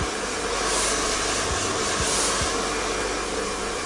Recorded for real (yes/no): yes